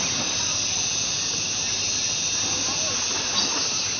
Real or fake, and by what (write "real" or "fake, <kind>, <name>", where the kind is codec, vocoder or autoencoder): real